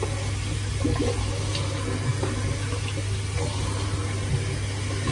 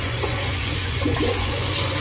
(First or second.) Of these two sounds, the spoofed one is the second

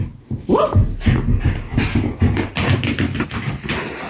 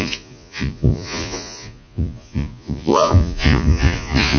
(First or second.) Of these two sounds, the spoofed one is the second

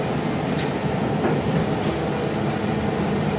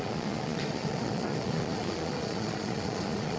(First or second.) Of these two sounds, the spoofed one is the second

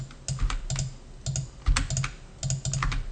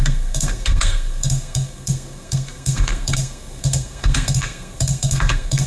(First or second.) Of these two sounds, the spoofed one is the second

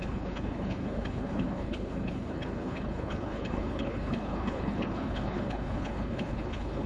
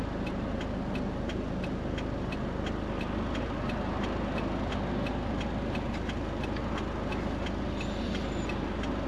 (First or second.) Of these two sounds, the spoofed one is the first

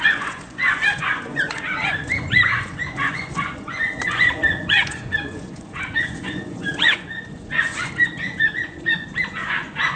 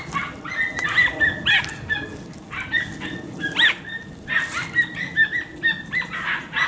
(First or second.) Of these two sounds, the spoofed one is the first